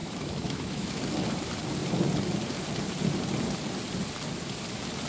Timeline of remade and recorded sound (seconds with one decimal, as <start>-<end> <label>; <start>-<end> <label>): 0.0-1.0 remade; 1.0-5.1 recorded